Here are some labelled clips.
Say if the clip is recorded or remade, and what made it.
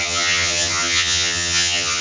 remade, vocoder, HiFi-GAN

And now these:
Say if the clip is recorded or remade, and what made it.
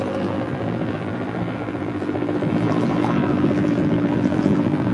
remade, vocoder, BigVGAN v2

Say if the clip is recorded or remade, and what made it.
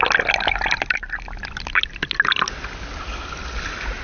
recorded